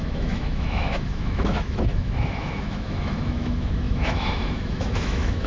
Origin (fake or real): fake